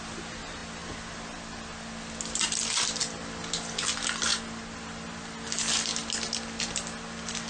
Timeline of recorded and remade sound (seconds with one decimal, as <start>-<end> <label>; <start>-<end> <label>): 0.0-7.5 recorded